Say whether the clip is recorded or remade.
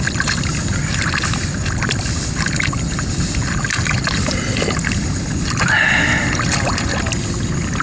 recorded